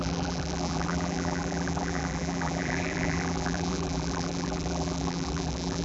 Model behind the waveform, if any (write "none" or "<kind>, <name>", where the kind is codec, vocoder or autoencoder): vocoder, BigVGAN v2